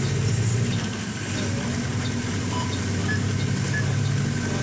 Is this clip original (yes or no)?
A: yes